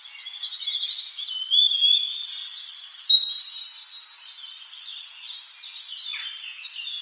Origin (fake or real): real